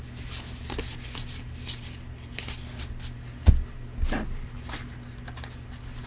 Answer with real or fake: real